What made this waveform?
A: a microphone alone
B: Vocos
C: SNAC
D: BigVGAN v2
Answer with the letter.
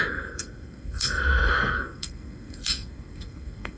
C